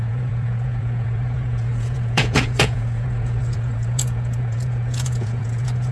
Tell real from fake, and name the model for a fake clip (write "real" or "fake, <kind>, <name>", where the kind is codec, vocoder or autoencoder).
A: fake, vocoder, Vocos